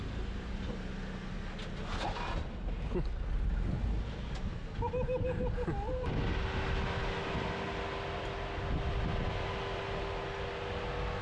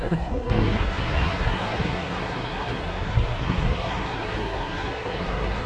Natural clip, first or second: first